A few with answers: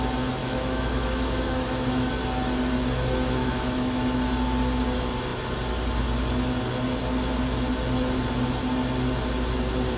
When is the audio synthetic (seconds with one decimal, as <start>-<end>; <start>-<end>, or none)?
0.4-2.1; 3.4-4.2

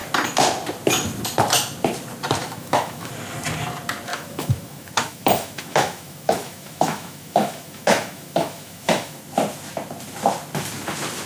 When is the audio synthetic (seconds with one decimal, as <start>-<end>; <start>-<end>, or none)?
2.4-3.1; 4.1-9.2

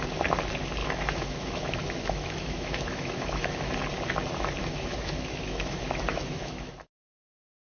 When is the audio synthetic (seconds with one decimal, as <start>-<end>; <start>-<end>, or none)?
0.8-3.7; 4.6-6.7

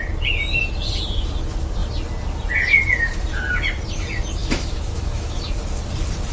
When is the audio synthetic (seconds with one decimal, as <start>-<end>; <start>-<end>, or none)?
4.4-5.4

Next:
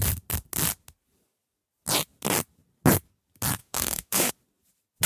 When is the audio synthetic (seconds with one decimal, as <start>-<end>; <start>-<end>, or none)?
3.6-4.3

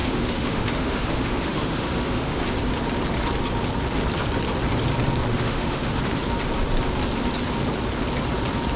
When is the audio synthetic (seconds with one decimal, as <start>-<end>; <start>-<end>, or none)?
0.0-2.4; 5.3-6.0

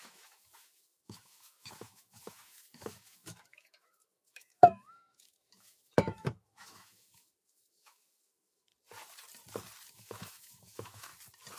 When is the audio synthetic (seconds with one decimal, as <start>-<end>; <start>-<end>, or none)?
0.0-8.7; 9.9-11.1

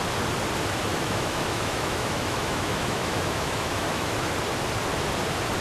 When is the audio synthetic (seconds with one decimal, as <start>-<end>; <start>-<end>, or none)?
0.9-4.3